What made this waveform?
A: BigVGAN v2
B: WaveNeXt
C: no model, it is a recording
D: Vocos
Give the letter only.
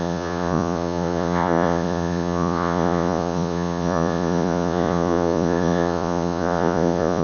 D